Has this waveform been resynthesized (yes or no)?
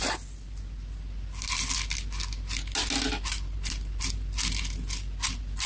no